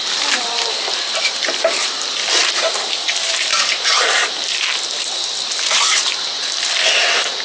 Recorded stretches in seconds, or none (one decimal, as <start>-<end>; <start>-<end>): 3.5-5.0